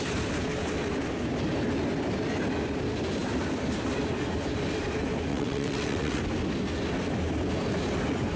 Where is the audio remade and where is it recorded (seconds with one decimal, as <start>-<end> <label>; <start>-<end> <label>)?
0.0-5.3 recorded; 5.3-6.2 remade; 6.2-8.4 recorded